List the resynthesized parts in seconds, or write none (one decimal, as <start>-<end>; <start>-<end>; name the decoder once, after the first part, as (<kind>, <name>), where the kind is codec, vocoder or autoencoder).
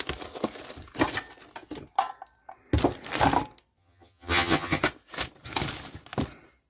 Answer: 3.8-4.8 (vocoder, HiFi-GAN)